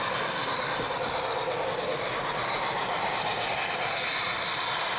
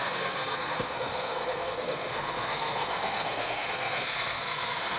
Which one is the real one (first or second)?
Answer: first